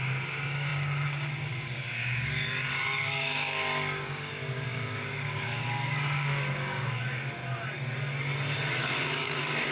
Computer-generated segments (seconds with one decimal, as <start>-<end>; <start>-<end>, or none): 0.0-7.4; 8.8-9.7